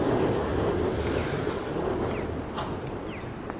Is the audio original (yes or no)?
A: yes